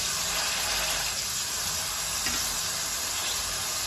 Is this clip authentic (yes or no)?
yes